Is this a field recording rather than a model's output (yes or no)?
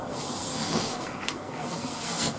no